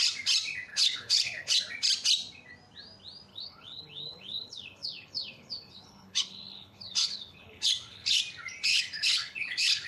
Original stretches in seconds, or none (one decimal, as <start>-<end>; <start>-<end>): 0.0-0.7; 1.6-3.3; 8.2-8.7